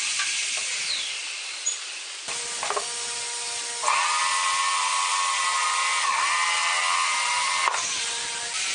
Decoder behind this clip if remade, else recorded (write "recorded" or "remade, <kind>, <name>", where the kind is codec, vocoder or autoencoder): recorded